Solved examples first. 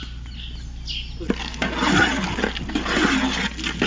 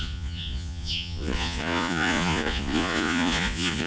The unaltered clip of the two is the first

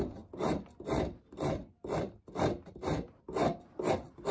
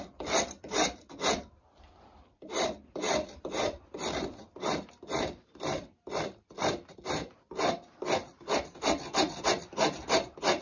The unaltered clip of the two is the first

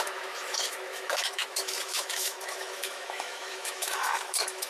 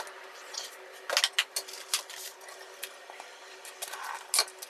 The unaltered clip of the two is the second